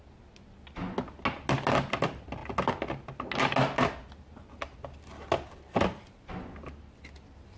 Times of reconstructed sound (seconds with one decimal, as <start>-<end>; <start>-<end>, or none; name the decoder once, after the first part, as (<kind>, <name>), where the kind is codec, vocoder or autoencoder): none